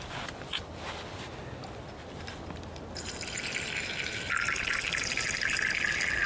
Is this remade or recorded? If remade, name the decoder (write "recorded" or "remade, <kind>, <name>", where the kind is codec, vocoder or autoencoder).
recorded